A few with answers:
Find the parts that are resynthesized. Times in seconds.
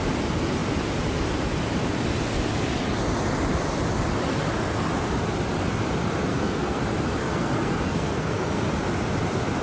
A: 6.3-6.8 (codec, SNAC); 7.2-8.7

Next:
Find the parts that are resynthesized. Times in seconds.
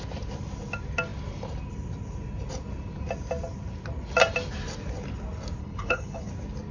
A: 5.6-6.3 (codec, HILCodec)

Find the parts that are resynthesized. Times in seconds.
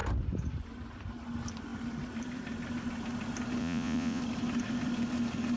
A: 3.6-4.2 (vocoder, Vocos)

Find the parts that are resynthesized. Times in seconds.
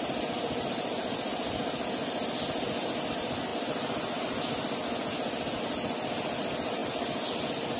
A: none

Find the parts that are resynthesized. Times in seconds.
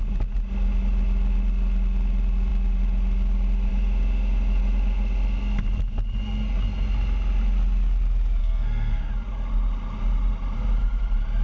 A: 8.4-9.1 (codec, SNAC)